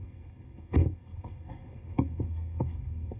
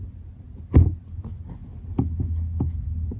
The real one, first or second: second